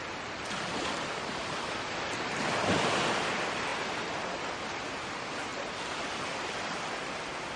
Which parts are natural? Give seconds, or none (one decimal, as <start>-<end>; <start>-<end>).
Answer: 0.0-7.6